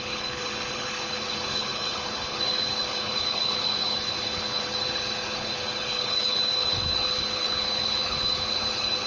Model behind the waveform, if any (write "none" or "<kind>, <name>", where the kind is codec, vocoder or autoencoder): codec, HILCodec